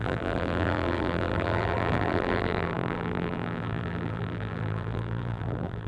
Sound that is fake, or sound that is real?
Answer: fake